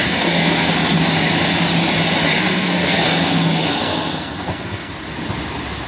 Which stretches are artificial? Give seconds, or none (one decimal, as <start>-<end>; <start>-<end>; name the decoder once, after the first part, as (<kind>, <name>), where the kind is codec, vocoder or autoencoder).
0.0-0.7 (codec, SNAC); 2.3-4.9